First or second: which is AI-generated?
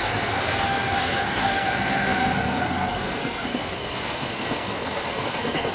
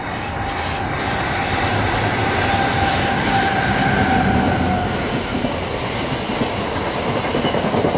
first